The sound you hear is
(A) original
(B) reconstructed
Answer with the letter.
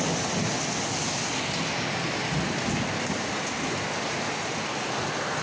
A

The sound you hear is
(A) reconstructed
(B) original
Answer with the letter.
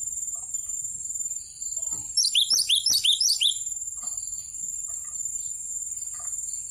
A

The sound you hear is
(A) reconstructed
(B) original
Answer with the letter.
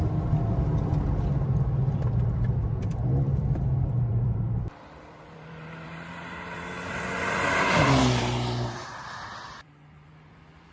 A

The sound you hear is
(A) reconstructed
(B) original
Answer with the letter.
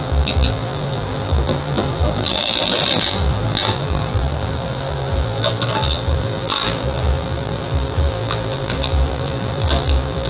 A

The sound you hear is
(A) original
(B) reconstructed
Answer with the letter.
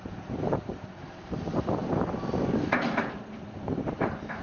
B